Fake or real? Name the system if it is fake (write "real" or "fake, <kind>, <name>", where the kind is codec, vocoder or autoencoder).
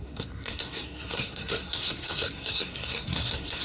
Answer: fake, codec, SNAC